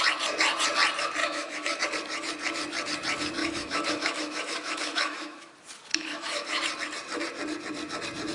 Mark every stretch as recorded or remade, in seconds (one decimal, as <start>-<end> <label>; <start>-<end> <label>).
0.0-1.2 recorded; 1.2-1.8 remade; 1.8-3.4 recorded; 3.4-5.5 remade; 5.5-5.9 recorded; 5.9-6.6 remade; 6.6-8.3 recorded

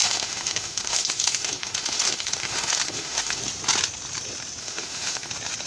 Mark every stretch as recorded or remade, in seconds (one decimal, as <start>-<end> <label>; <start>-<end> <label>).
0.0-3.4 remade; 3.4-4.6 recorded; 4.6-5.3 remade; 5.3-5.7 recorded

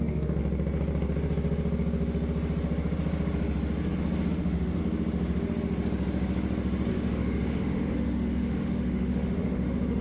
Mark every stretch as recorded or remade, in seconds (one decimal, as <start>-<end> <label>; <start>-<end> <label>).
0.0-0.4 remade; 0.4-4.3 recorded; 4.3-4.8 remade; 4.8-6.9 recorded; 6.9-10.0 remade

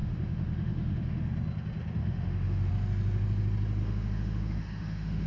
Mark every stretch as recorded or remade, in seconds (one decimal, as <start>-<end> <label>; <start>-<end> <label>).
0.0-1.3 remade; 1.3-2.0 recorded; 2.0-2.7 remade; 2.7-3.8 recorded; 3.8-5.3 remade